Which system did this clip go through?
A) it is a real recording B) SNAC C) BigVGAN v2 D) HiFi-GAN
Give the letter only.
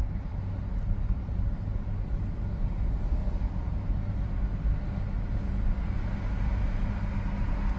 A